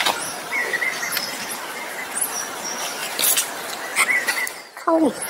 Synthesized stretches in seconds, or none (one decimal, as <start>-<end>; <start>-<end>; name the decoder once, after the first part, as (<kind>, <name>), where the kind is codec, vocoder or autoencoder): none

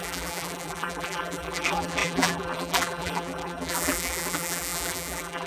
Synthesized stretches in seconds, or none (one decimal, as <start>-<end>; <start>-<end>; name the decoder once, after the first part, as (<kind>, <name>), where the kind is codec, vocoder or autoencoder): 0.0-5.5 (vocoder, BigVGAN v2)

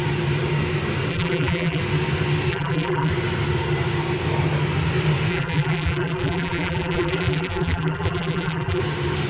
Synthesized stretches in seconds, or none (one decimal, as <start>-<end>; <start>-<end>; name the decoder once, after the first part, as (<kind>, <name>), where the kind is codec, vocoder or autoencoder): 1.1-1.8 (vocoder, BigVGAN v2); 2.5-3.1; 5.3-8.8

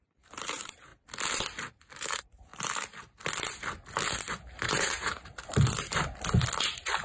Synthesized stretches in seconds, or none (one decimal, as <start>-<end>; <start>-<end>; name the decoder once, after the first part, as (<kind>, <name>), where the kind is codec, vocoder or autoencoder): 0.0-0.9 (vocoder, BigVGAN v2); 1.7-2.5; 4.3-5.3

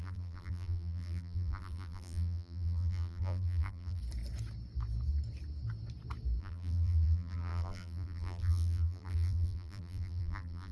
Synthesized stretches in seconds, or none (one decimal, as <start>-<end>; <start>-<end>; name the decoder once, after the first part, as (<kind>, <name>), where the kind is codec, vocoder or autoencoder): 0.0-4.0 (vocoder, BigVGAN v2); 6.4-10.7

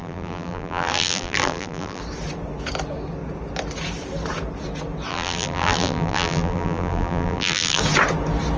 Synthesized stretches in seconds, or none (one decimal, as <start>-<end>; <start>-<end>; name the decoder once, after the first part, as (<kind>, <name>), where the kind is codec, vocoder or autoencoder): 0.0-2.0 (vocoder, BigVGAN v2); 5.1-7.8

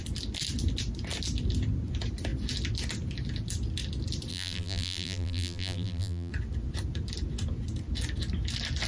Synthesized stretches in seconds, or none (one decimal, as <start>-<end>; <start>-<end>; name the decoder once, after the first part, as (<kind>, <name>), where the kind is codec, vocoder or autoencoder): 4.3-6.3 (vocoder, BigVGAN v2)